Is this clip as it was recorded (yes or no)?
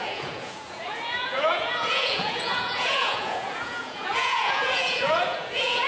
no